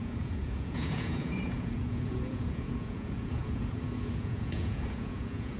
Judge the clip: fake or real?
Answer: fake